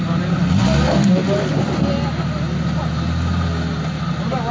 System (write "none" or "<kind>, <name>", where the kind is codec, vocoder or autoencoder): none